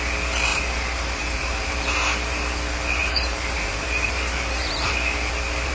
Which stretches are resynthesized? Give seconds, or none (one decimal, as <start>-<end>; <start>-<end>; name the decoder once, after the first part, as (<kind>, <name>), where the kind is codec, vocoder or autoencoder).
0.5-1.7 (vocoder, BigVGAN v2); 3.0-4.9

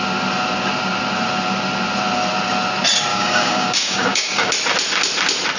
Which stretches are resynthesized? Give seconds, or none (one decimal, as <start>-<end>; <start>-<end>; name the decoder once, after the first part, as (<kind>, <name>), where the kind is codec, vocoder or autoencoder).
3.1-4.5 (codec, DAC)

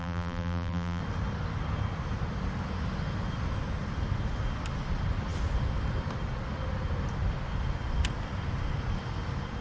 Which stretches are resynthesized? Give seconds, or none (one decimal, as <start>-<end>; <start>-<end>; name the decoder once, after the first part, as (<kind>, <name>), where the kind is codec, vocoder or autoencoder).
0.0-1.0 (vocoder, BigVGAN v2)

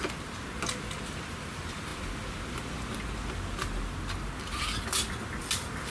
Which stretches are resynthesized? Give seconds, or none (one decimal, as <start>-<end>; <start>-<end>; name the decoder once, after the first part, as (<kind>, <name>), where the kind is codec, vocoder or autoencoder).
none

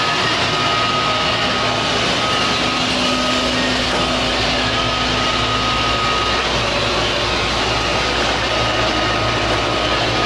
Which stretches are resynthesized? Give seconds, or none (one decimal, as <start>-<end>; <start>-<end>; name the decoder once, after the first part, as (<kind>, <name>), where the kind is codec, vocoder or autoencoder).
none

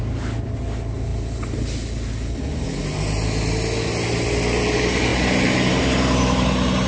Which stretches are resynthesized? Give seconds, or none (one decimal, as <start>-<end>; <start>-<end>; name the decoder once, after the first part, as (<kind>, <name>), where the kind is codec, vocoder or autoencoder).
none